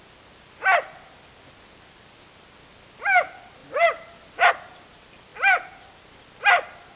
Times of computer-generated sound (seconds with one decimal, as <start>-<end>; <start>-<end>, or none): none